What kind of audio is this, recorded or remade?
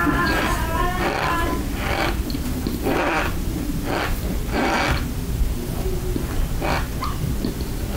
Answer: recorded